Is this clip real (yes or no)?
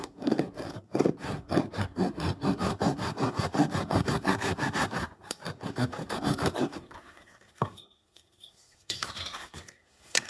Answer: no